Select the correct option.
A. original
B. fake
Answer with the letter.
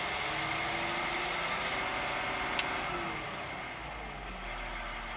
A